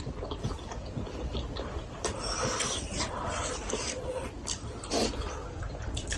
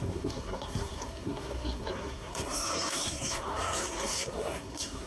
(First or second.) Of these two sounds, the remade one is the second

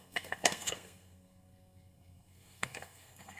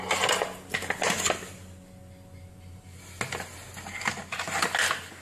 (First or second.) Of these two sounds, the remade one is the first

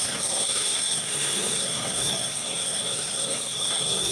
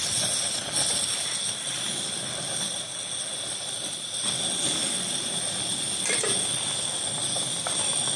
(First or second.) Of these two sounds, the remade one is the first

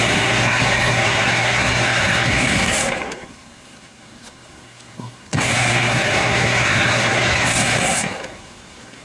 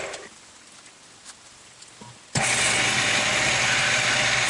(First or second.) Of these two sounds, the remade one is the first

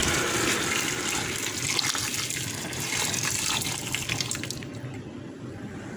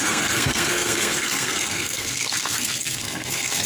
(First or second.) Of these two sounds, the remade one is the second